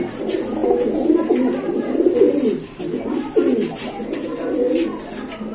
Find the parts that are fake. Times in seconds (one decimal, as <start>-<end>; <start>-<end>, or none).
none